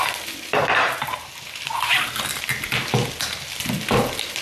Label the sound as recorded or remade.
recorded